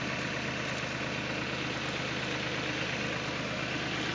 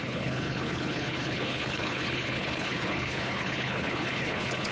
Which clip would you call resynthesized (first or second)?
second